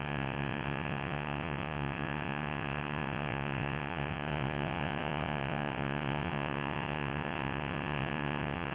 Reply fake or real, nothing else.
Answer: fake